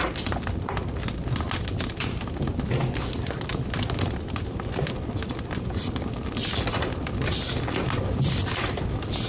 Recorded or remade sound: recorded